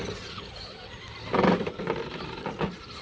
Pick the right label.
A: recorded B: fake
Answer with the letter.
A